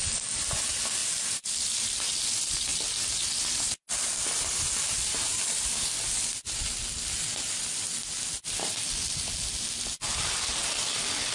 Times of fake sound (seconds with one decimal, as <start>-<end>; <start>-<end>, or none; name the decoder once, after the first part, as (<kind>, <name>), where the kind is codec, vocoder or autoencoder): none